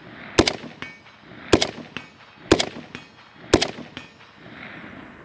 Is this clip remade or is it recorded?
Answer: recorded